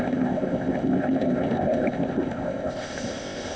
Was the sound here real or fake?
fake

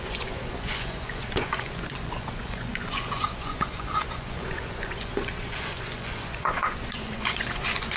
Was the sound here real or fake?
fake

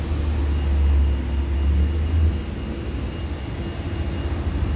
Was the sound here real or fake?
real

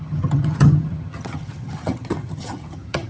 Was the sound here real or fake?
fake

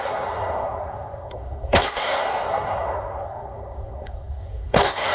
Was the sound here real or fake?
fake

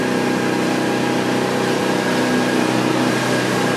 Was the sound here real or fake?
real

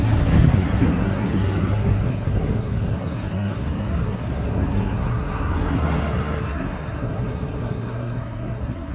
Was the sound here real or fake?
fake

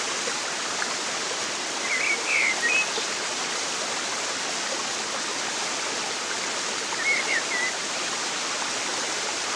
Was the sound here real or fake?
real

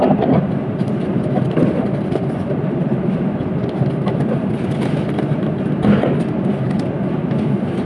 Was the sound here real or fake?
real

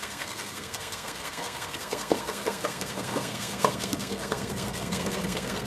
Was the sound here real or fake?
fake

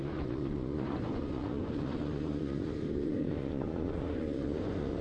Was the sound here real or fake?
fake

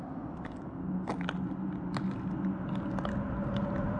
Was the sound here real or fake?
real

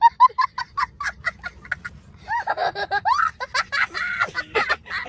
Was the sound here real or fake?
real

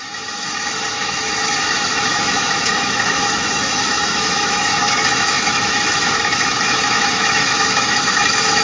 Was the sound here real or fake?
fake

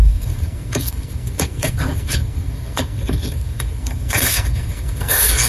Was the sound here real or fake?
fake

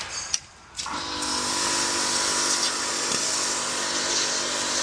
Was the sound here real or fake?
real